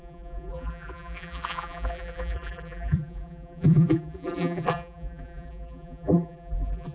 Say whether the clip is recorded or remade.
remade